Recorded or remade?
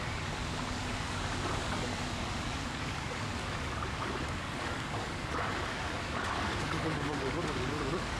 remade